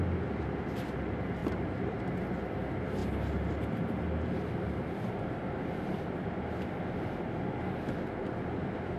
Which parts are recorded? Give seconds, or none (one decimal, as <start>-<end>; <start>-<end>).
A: 0.0-1.4; 2.0-9.0